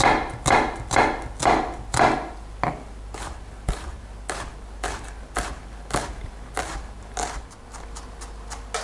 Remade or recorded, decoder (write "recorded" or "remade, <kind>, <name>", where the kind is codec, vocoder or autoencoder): recorded